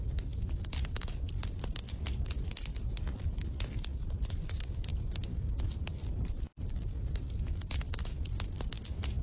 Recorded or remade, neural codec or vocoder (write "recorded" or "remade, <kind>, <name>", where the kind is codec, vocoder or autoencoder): recorded